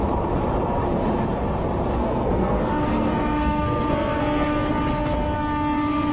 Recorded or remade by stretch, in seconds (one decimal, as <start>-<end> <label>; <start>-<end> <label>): 0.0-2.0 recorded; 2.0-4.7 remade; 4.7-6.1 recorded